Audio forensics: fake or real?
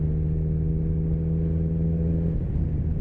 real